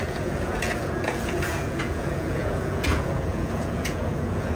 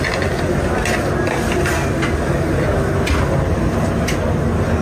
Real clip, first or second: second